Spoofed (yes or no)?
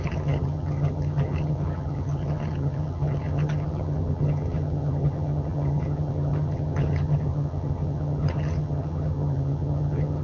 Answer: yes